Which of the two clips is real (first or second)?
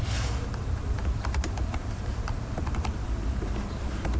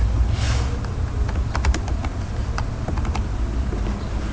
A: second